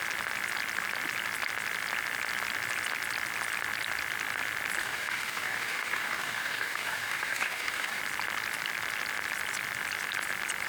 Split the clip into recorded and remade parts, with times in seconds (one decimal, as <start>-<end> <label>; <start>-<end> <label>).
0.0-4.8 recorded; 4.8-8.0 remade; 8.0-10.7 recorded